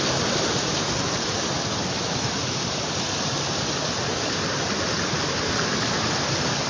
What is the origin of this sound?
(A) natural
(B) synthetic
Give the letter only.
A